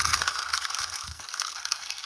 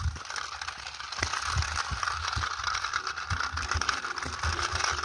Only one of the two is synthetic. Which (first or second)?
first